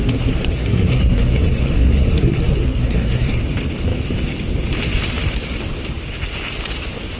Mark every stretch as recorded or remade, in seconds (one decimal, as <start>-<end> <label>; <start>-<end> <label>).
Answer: 0.0-3.4 remade; 3.4-7.2 recorded